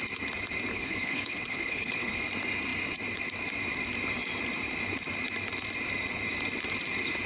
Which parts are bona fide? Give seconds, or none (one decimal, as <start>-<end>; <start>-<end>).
0.0-0.7; 2.2-7.3